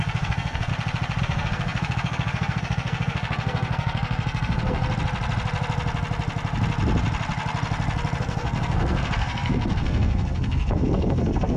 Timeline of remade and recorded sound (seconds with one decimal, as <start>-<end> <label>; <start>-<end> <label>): 0.0-0.7 remade; 0.7-1.2 recorded; 1.2-4.8 remade; 4.8-8.2 recorded; 8.2-11.6 remade